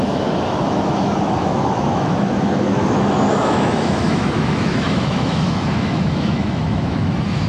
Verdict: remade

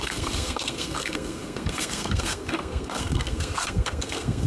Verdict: remade